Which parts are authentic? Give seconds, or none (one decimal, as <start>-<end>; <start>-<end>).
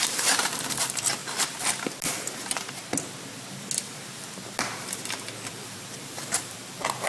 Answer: 1.2-5.5